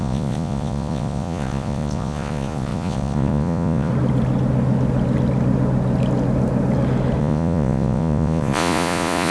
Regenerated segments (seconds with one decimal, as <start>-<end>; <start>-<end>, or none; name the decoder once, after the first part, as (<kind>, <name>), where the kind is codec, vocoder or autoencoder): 0.0-3.9 (vocoder, Vocos); 7.2-9.3